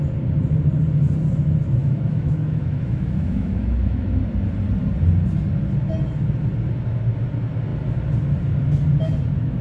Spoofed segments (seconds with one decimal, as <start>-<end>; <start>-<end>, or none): 1.8-4.2